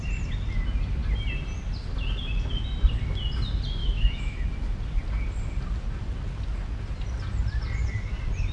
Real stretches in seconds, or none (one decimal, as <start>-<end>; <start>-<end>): 0.0-3.8; 4.4-8.5